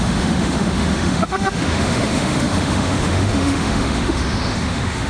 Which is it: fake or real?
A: fake